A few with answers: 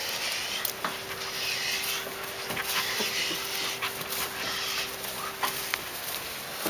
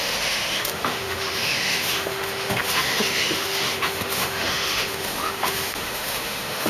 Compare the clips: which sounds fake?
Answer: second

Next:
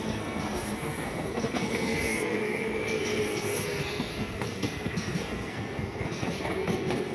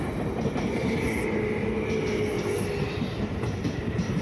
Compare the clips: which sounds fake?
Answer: first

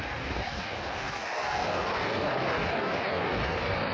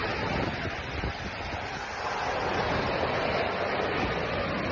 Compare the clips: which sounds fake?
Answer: first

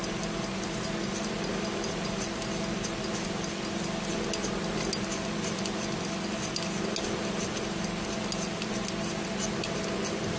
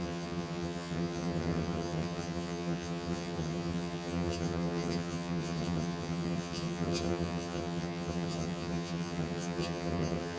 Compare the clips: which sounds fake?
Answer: second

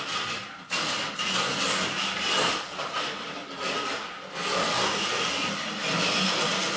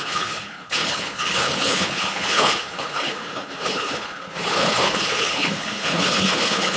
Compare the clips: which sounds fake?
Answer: second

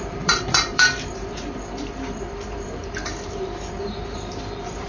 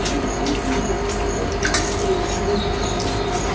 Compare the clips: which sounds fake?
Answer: first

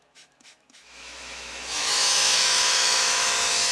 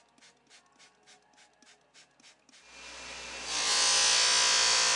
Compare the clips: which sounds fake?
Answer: first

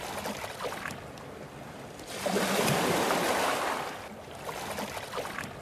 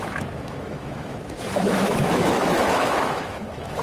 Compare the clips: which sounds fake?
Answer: second